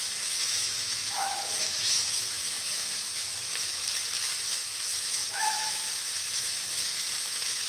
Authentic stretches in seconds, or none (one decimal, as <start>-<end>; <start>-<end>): 3.8-4.4